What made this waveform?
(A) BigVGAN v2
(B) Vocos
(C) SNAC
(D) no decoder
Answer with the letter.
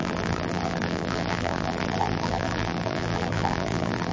A